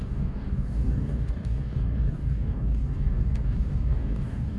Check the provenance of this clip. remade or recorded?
remade